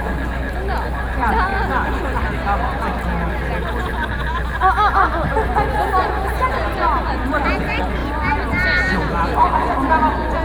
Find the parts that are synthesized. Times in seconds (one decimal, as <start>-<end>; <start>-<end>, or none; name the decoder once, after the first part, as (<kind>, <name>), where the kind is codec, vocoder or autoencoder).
6.0-7.2 (vocoder, BigVGAN v2)